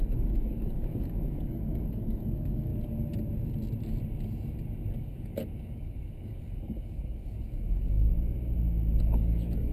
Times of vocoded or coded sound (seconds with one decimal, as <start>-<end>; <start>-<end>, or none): 0.0-2.7; 5.0-8.1; 9.0-9.7